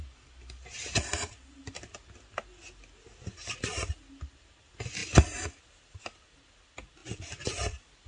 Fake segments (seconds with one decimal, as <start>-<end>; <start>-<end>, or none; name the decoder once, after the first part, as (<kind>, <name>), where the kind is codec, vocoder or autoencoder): none